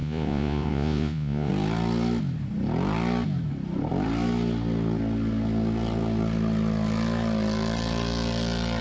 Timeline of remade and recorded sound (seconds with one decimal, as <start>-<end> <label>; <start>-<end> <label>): 0.0-1.5 remade; 1.5-8.8 recorded